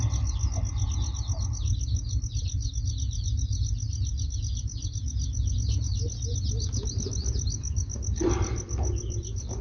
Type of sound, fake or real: real